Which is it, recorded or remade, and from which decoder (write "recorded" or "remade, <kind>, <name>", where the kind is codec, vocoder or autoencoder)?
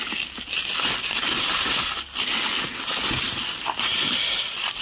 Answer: recorded